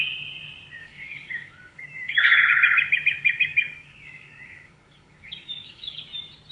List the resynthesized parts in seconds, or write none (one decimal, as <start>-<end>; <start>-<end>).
0.8-2.4; 3.2-6.0